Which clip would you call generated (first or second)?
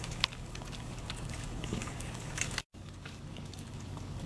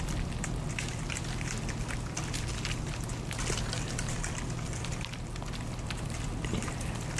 first